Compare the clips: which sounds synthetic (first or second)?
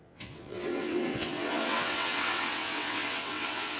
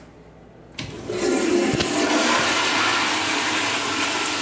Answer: first